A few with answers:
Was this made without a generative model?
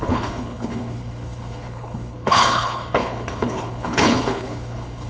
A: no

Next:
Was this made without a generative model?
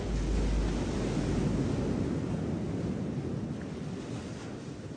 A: yes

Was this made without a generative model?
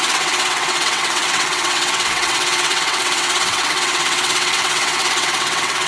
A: no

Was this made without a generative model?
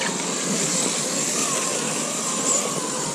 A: yes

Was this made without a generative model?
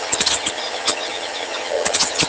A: no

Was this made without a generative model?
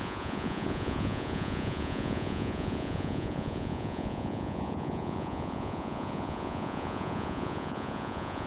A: no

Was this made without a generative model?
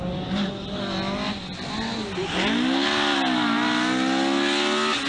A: yes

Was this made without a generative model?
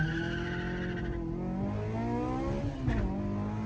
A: yes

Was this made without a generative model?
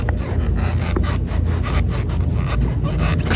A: yes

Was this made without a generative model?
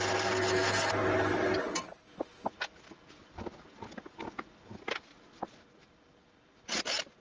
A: yes